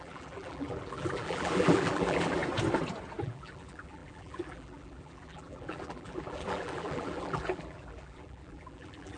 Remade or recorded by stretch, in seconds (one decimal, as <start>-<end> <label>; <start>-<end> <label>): 0.0-2.4 remade; 2.4-3.2 recorded; 3.2-9.2 remade